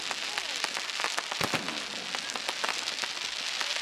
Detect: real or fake real